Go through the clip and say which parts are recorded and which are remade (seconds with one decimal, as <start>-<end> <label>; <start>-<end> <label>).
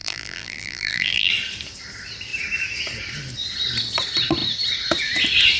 0.0-1.3 remade; 1.3-5.6 recorded